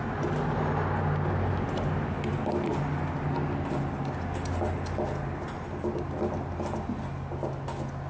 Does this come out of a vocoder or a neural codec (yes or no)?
no